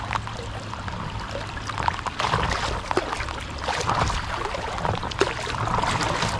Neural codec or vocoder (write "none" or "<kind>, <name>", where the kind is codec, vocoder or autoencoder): none